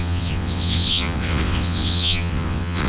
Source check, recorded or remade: remade